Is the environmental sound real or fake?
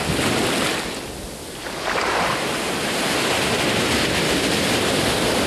real